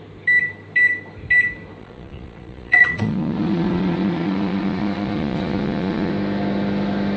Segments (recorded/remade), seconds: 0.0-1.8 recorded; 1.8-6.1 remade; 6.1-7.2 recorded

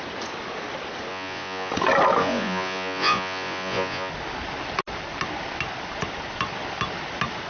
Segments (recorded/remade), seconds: 0.0-1.1 recorded; 1.1-1.7 remade; 1.7-2.2 recorded; 2.2-4.1 remade; 4.1-7.5 recorded

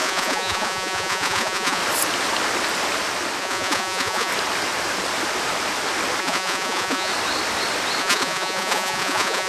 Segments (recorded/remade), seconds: 0.0-1.8 remade; 1.8-3.4 recorded; 3.4-4.3 remade; 4.3-6.2 recorded; 6.2-7.1 remade; 7.1-8.0 recorded; 8.0-9.5 remade

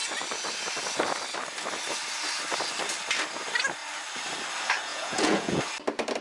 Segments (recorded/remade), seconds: 0.0-4.9 recorded; 4.9-5.6 remade; 5.6-6.2 recorded

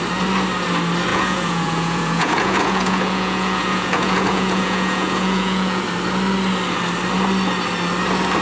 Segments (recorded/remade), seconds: 0.0-1.1 recorded; 1.1-5.8 remade; 5.8-8.4 recorded

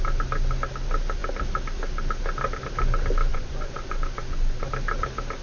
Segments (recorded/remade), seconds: 0.0-3.3 recorded; 3.3-4.7 remade; 4.7-5.4 recorded

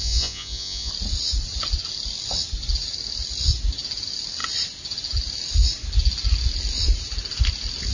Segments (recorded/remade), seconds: 0.0-0.9 remade; 0.9-7.9 recorded